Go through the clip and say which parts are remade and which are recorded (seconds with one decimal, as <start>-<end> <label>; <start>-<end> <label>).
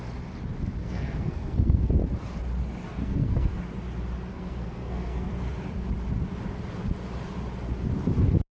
0.0-0.8 recorded; 0.8-1.9 remade; 1.9-3.0 recorded; 3.0-3.6 remade; 3.6-4.3 recorded; 4.3-5.3 remade; 5.3-8.5 recorded